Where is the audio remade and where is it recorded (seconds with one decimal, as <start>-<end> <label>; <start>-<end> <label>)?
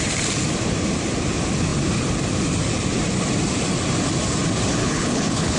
0.0-4.8 recorded; 4.8-5.6 remade